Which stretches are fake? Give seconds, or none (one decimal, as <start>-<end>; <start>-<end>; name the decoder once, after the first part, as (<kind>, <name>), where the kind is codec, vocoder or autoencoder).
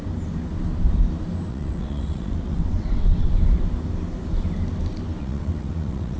1.5-3.3 (vocoder, WaveNeXt); 5.2-6.2